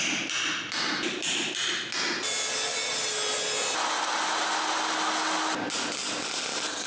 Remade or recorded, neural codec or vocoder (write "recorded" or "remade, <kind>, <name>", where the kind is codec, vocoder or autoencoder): recorded